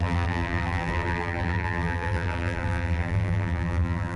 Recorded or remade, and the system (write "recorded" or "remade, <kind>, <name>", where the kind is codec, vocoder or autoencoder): remade, vocoder, BigVGAN v2